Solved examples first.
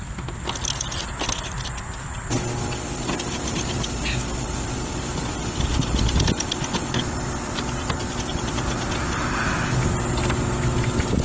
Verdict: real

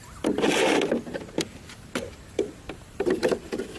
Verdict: fake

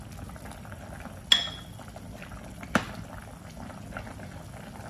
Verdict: real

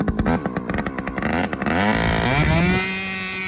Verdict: real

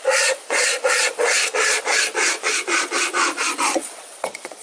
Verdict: fake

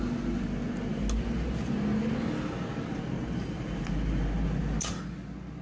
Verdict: real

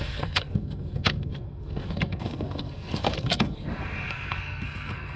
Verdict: fake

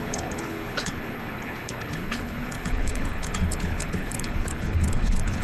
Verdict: fake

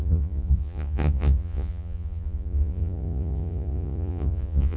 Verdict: fake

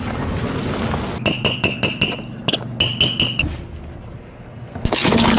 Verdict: real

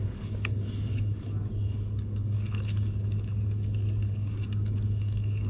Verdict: fake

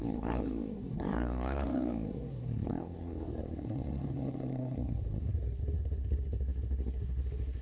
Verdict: fake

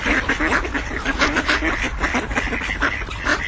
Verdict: real